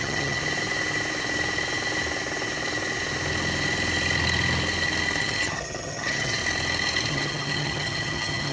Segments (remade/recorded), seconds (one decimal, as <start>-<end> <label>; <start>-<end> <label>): 0.0-0.4 remade; 0.4-5.2 recorded; 5.2-6.4 remade; 6.4-7.1 recorded; 7.1-8.5 remade